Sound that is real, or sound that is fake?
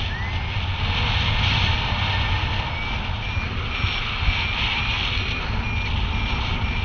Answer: real